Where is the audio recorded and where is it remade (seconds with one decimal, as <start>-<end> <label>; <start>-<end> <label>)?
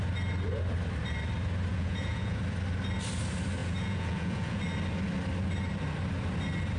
0.0-1.7 recorded; 1.7-2.4 remade; 2.4-3.6 recorded; 3.6-4.6 remade; 4.6-6.8 recorded